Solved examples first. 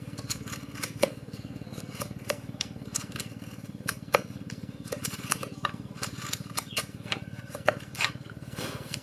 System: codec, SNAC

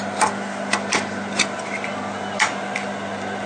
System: none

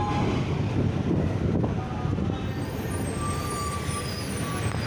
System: none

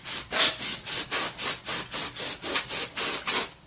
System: none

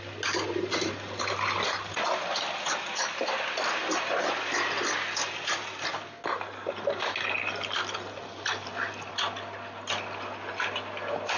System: none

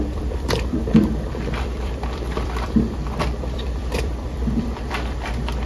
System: vocoder, BigVGAN v2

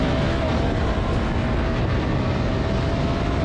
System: none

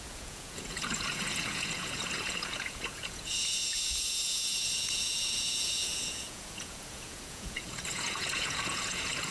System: vocoder, Vocos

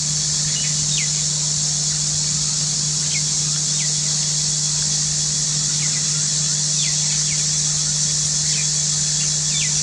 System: none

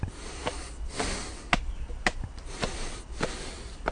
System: none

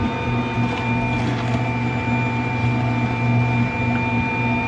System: none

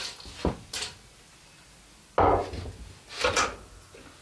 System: none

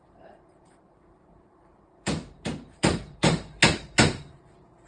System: vocoder, BigVGAN v2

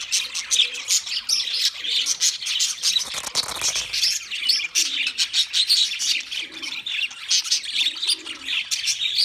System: none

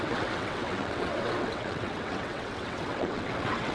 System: vocoder, WaveNeXt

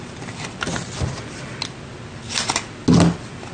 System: none